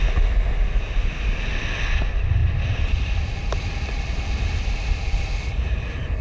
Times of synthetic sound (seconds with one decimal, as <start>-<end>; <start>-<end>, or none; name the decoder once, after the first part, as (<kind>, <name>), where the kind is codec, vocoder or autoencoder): 2.4-5.1 (vocoder, BigVGAN v2)